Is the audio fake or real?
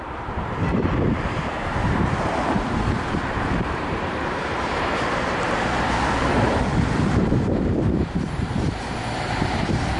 fake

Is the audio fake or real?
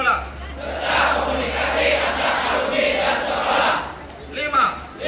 real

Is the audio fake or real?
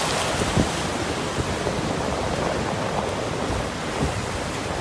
real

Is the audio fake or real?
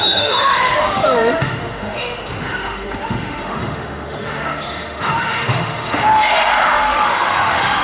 fake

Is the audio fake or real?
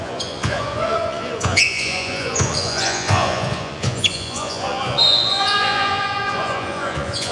fake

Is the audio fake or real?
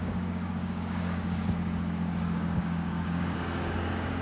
fake